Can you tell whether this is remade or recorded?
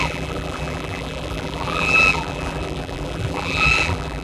remade